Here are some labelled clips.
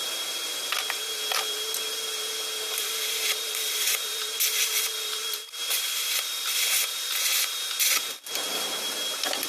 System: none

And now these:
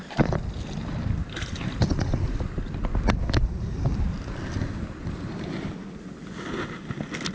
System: none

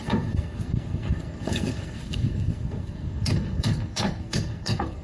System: codec, SNAC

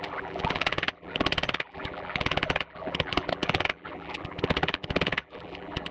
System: vocoder, BigVGAN v2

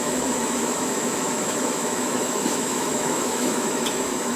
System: autoencoder, DAC-VAE